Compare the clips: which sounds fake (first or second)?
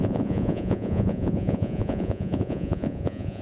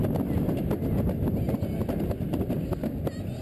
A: first